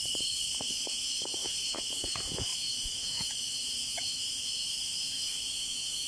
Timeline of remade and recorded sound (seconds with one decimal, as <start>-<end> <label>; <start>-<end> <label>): 0.0-6.1 remade